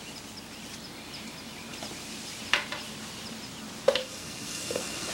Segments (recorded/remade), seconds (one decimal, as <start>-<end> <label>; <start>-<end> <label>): 0.0-4.0 recorded; 4.0-5.1 remade